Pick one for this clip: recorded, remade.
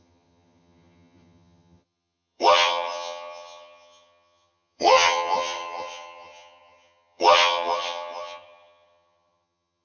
remade